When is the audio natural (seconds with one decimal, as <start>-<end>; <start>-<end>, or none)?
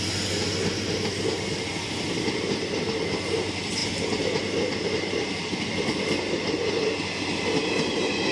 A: 0.0-8.3